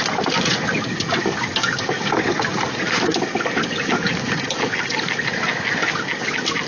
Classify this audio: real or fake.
real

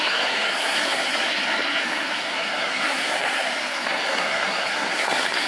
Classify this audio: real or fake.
fake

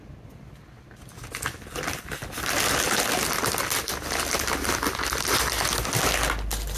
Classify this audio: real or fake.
real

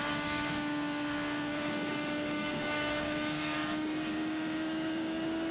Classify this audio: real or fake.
fake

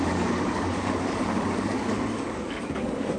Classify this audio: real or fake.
fake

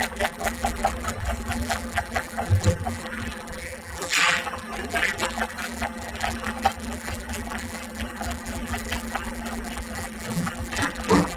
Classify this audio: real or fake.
fake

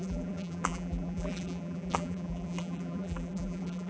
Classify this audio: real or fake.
fake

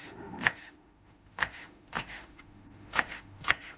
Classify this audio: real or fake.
fake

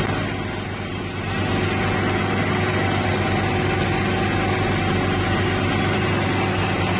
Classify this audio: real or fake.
real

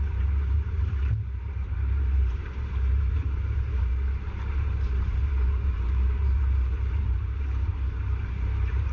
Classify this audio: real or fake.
fake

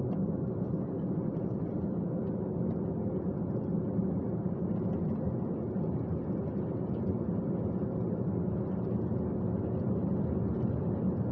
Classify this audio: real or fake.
real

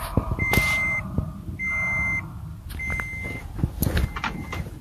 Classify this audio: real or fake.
real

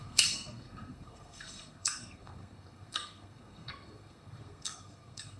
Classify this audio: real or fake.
fake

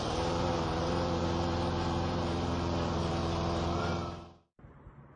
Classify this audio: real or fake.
fake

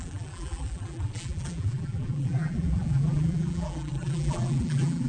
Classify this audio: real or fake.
fake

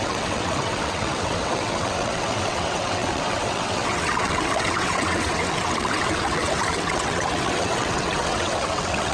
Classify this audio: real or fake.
fake